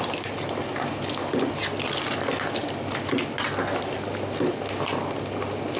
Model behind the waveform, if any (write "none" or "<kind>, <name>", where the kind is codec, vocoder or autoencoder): none